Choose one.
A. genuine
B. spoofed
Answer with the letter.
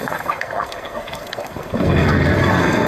B